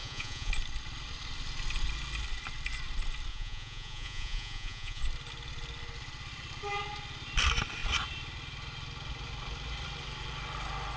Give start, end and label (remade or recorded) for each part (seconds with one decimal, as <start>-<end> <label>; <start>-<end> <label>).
0.0-0.5 remade; 0.5-3.3 recorded; 3.3-5.0 remade; 5.0-11.0 recorded